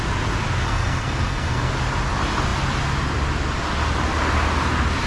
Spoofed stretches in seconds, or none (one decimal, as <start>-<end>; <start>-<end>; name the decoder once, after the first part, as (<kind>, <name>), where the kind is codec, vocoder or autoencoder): 0.6-1.7 (codec, SNAC)